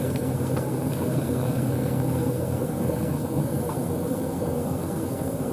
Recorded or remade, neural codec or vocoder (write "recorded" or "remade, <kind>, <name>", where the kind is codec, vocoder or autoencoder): remade, codec, SNAC